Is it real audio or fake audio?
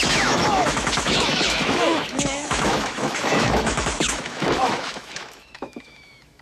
fake